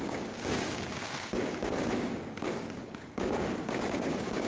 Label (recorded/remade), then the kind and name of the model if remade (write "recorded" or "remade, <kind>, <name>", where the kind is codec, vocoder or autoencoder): remade, codec, DAC